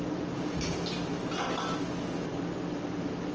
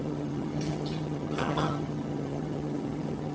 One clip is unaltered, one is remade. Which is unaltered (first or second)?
first